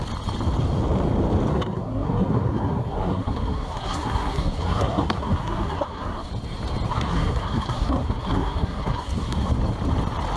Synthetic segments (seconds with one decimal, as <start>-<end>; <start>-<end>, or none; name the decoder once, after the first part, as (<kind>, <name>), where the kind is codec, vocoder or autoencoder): 1.5-6.3 (codec, SNAC); 6.9-9.5